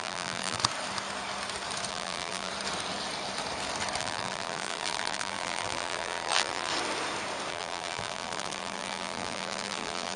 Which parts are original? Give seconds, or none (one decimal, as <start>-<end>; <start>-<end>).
0.6-1.9; 2.5-4.0; 6.7-7.5